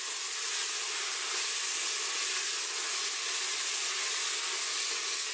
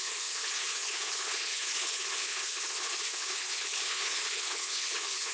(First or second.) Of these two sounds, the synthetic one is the second